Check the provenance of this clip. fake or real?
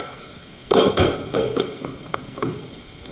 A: fake